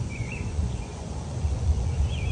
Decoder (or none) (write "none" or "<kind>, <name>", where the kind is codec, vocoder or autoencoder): vocoder, Vocos